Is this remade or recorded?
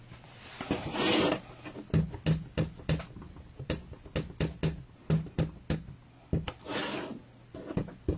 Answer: recorded